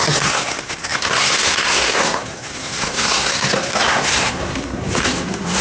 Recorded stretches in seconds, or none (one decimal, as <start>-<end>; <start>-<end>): none